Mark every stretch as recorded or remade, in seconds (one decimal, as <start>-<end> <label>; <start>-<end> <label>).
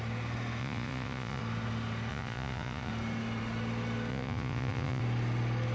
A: 0.0-0.6 recorded; 0.6-1.4 remade; 1.4-2.1 recorded; 2.1-2.9 remade; 2.9-4.1 recorded; 4.1-5.0 remade; 5.0-5.7 recorded